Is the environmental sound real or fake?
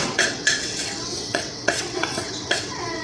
fake